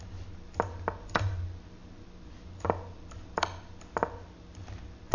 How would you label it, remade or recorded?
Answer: recorded